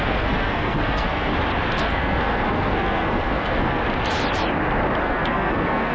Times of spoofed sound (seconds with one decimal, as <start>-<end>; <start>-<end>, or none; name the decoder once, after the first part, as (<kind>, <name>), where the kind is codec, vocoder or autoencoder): 0.0-1.3 (codec, SNAC); 1.8-3.8; 5.0-5.9